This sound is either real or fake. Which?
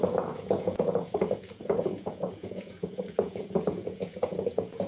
fake